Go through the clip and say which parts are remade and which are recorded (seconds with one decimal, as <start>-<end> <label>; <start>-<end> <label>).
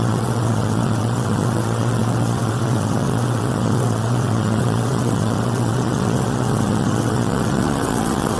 0.0-8.4 remade